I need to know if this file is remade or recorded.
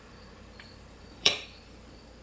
remade